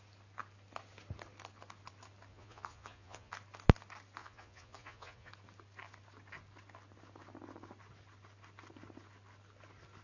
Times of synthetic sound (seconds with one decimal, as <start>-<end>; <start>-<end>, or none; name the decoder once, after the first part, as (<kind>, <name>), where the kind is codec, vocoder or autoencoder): 2.3-3.3 (vocoder, Vocos); 4.2-5.3